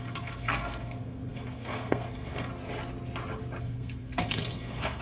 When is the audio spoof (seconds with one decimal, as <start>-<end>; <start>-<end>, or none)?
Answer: 0.0-2.5; 3.6-5.0